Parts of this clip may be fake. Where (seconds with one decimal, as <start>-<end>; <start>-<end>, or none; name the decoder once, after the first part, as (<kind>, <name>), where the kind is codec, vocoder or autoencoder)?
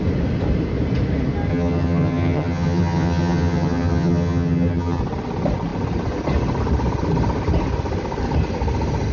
1.5-5.0 (vocoder, HiFi-GAN)